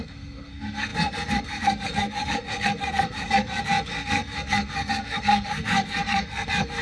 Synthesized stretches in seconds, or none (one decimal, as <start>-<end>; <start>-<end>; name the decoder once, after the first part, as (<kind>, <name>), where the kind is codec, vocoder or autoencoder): 0.0-6.8 (codec, SNAC)